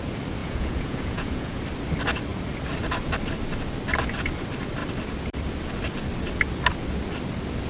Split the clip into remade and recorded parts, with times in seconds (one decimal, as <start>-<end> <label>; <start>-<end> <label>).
0.0-0.4 recorded; 0.4-1.6 remade; 1.6-7.7 recorded